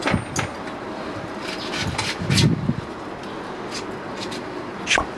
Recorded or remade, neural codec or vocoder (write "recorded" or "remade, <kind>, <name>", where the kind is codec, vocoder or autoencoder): recorded